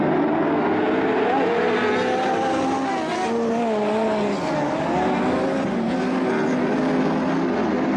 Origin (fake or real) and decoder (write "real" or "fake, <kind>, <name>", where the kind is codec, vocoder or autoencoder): real